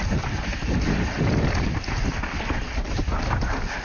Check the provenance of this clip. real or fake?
real